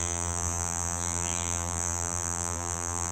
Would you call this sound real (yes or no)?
no